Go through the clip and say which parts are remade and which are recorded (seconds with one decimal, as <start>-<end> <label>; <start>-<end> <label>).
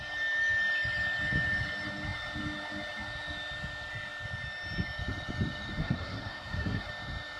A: 0.0-5.8 recorded; 5.8-6.9 remade; 6.9-7.4 recorded